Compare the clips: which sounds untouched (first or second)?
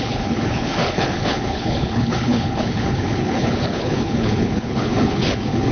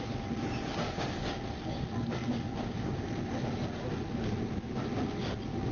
second